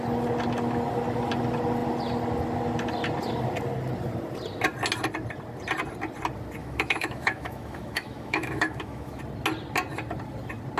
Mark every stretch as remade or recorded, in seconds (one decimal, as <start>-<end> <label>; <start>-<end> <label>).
0.0-6.6 recorded; 6.6-9.2 remade; 9.2-10.8 recorded

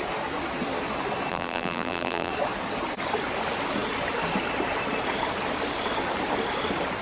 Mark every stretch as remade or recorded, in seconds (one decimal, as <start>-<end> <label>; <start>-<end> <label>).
0.0-1.3 recorded; 1.3-2.3 remade; 2.3-7.0 recorded

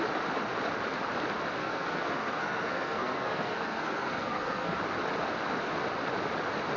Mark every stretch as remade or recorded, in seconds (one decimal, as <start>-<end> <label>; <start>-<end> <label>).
0.0-1.6 recorded; 1.6-4.8 remade; 4.8-6.8 recorded

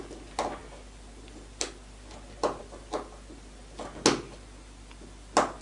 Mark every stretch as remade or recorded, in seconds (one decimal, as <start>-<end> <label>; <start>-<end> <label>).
0.0-5.6 recorded

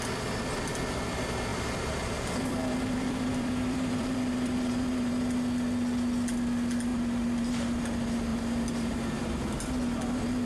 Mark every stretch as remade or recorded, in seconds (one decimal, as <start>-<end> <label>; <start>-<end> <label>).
0.0-1.5 recorded; 1.5-5.1 remade; 5.1-6.9 recorded; 6.9-7.8 remade; 7.8-8.3 recorded; 8.3-9.4 remade; 9.4-10.5 recorded

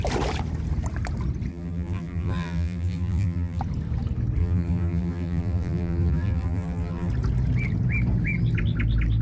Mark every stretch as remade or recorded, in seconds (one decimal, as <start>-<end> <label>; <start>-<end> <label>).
0.0-1.5 recorded; 1.5-3.6 remade; 3.6-4.4 recorded; 4.4-7.1 remade; 7.1-9.2 recorded